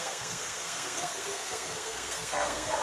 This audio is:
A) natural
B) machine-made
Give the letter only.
B